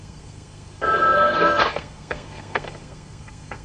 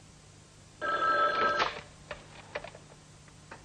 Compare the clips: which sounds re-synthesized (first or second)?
first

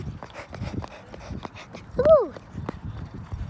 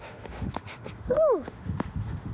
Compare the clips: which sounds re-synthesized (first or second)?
second